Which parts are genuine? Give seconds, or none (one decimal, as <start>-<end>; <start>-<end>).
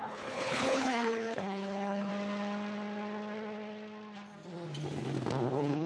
2.1-5.5